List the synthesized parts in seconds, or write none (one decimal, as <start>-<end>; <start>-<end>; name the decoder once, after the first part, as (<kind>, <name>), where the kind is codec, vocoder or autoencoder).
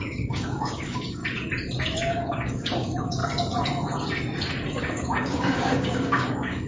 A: 0.0-1.2 (codec, DAC); 2.1-3.2; 4.8-6.7